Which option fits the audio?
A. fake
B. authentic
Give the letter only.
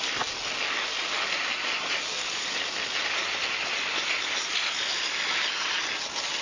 B